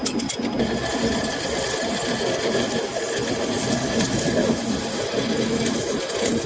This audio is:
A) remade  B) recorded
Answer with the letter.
B